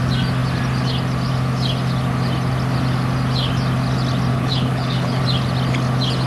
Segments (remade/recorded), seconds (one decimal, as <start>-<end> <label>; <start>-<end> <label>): 0.0-4.3 recorded; 4.3-5.2 remade; 5.2-6.3 recorded